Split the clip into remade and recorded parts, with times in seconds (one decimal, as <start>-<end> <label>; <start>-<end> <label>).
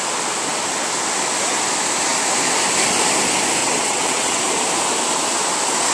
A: 0.0-3.6 recorded; 3.6-4.4 remade; 4.4-5.9 recorded